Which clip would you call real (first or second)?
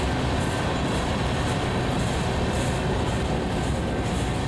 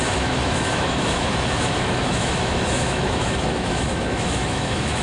first